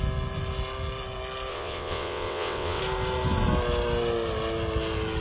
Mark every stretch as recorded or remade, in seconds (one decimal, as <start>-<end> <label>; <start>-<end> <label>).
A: 0.0-1.5 recorded; 1.5-2.8 remade; 2.8-5.2 recorded